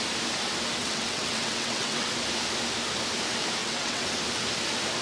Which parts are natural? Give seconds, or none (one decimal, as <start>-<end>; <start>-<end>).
0.0-0.8; 2.1-3.6; 4.2-5.0